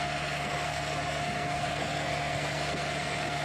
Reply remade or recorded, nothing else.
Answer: remade